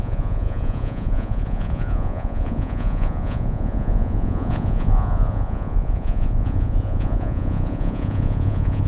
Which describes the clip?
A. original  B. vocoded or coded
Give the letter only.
B